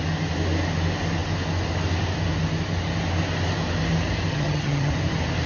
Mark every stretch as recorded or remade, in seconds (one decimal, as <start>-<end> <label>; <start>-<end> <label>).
0.0-4.3 recorded; 4.3-4.9 remade; 4.9-5.5 recorded